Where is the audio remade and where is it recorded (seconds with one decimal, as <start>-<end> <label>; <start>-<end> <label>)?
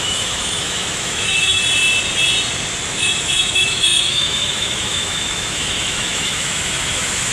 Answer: 0.0-1.6 remade; 1.6-2.9 recorded; 2.9-7.3 remade